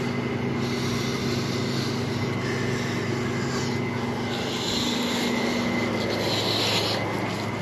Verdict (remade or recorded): recorded